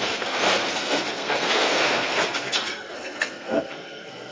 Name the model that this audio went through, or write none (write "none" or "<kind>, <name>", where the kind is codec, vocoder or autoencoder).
codec, SNAC